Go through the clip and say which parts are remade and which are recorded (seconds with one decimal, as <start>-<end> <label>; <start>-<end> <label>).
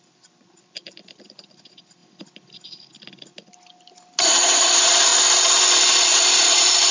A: 0.0-2.0 remade; 2.0-4.2 recorded; 4.2-5.1 remade; 5.1-5.9 recorded; 5.9-6.9 remade